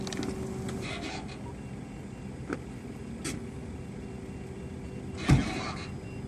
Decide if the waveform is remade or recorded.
recorded